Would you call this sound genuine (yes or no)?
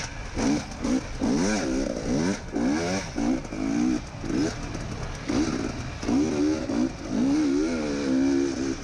yes